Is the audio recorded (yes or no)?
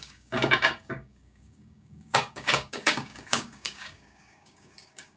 no